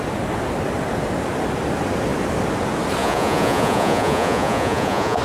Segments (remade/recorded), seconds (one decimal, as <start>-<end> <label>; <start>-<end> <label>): 0.0-3.0 recorded; 3.0-5.2 remade